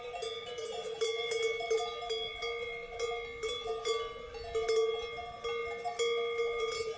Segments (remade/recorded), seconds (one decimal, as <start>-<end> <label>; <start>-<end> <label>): 0.0-7.0 recorded